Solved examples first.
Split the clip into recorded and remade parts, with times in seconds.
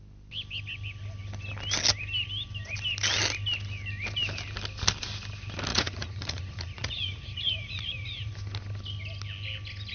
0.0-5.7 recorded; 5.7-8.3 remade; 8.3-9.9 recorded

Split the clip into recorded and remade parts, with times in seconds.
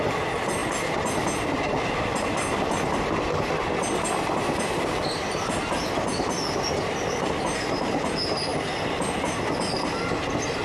0.0-10.6 recorded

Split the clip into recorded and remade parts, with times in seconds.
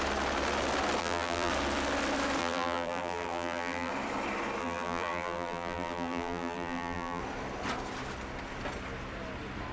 0.0-1.0 recorded; 1.0-1.5 remade; 1.5-2.4 recorded; 2.4-3.9 remade; 3.9-4.6 recorded; 4.6-7.2 remade; 7.2-9.7 recorded